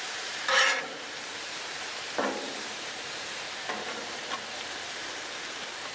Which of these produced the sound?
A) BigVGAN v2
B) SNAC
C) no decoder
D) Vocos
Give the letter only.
A